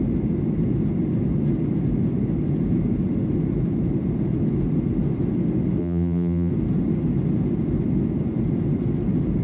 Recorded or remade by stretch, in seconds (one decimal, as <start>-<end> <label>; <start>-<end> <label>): 0.0-5.8 recorded; 5.8-6.5 remade; 6.5-9.4 recorded